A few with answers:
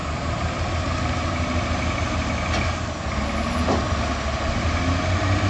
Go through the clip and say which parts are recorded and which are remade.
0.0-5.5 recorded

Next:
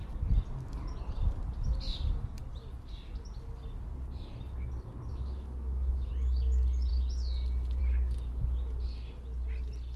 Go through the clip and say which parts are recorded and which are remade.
0.0-5.1 recorded; 5.1-6.1 remade; 6.1-10.0 recorded

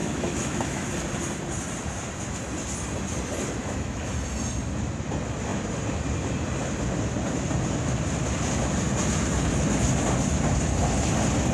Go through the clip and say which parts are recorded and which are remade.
0.0-0.9 remade; 0.9-3.6 recorded; 3.6-4.1 remade; 4.1-11.5 recorded

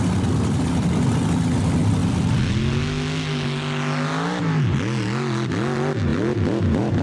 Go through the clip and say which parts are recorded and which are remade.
0.0-7.0 recorded